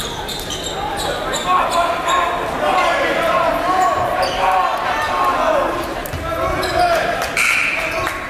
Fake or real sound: real